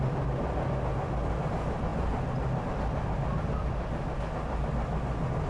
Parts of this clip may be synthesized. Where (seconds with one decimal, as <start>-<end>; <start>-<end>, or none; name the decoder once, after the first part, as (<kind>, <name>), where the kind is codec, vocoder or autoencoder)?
none